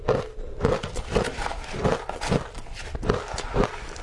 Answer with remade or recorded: recorded